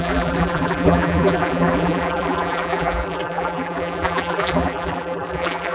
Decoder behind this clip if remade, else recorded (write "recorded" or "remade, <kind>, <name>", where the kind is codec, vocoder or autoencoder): remade, vocoder, BigVGAN v2